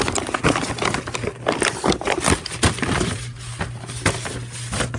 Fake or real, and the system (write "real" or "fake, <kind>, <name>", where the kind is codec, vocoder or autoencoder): real